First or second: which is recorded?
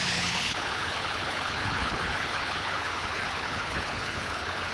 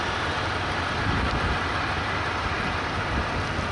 second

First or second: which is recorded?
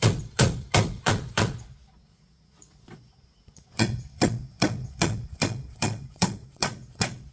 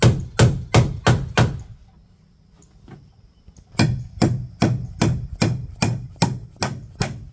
second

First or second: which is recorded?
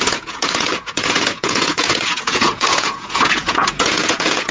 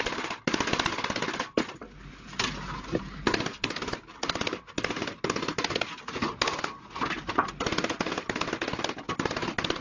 second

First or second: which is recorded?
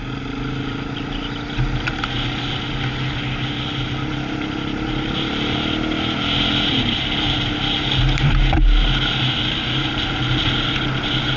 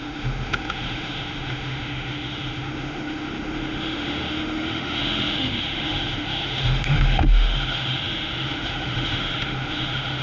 first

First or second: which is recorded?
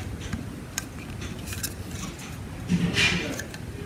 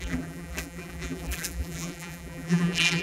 first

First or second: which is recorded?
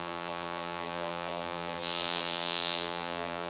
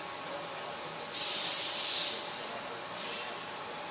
second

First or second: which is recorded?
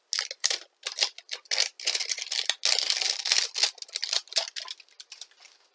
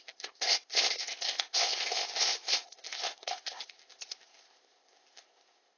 first